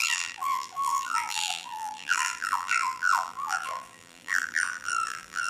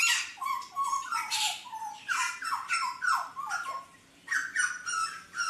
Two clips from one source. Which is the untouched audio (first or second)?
second